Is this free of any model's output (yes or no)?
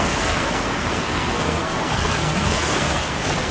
no